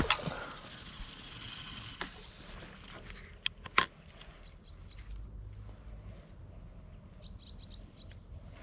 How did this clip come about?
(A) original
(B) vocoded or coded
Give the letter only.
A